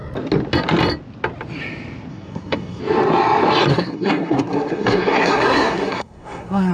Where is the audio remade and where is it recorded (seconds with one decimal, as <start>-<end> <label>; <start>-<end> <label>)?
0.0-2.1 recorded; 2.1-2.8 remade; 2.8-3.7 recorded; 3.7-6.7 remade